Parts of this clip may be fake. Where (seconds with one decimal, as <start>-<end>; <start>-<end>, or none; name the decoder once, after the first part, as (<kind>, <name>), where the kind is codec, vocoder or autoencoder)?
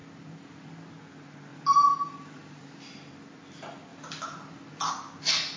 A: 1.5-3.1 (vocoder, BigVGAN v2); 3.9-4.9